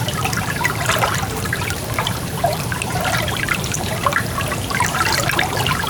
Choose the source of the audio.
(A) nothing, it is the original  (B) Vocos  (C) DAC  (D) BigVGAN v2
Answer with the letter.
D